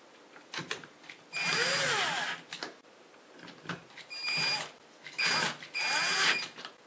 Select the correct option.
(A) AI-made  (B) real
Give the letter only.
B